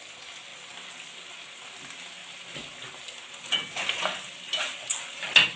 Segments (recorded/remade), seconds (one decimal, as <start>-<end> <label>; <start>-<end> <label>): 0.0-5.6 recorded